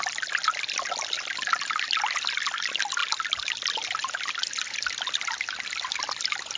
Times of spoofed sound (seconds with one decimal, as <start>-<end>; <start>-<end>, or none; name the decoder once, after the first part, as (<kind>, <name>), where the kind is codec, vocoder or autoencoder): none